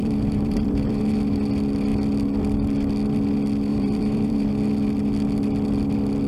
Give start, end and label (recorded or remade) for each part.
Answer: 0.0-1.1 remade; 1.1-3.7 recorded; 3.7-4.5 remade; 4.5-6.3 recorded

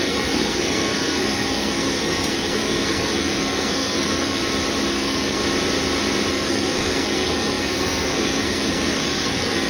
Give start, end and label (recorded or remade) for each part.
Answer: 0.0-4.4 remade; 4.4-4.9 recorded; 4.9-5.4 remade; 5.4-6.3 recorded; 6.3-9.7 remade

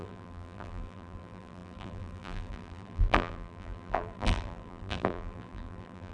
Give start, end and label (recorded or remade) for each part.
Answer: 0.0-6.1 remade

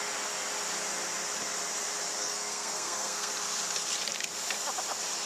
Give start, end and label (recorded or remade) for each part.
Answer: 0.0-2.2 recorded; 2.2-3.3 remade; 3.3-5.3 recorded